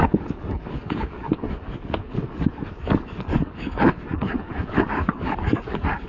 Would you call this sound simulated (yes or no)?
yes